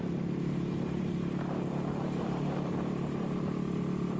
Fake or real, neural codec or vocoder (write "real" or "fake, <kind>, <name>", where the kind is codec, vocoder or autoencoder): real